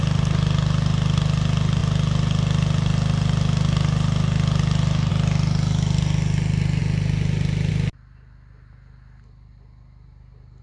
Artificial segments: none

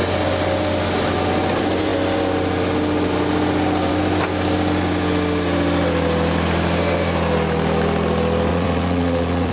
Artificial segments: 8.5-9.5 (vocoder, Vocos)

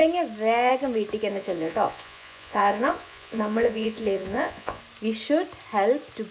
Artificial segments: 1.3-4.8 (vocoder, Vocos)

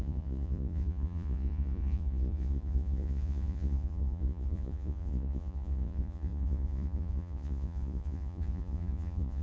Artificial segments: 0.0-9.4 (vocoder, Vocos)

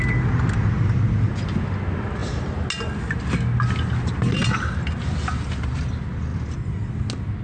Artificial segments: none

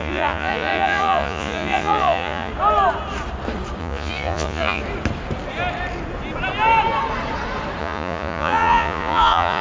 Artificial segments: 0.0-2.5 (vocoder, Vocos); 3.8-4.8; 7.8-9.6